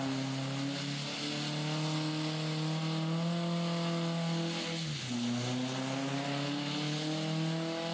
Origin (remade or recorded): recorded